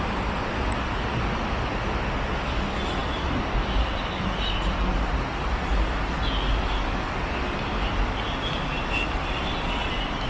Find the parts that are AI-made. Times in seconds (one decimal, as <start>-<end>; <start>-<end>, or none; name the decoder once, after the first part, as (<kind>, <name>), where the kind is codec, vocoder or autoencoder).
3.0-4.4 (vocoder, BigVGAN v2)